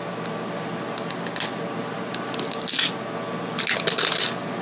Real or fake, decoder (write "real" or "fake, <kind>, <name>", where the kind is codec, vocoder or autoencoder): real